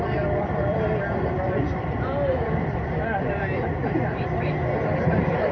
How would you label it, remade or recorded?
remade